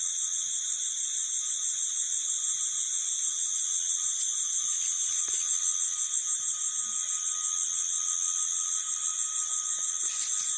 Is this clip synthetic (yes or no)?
no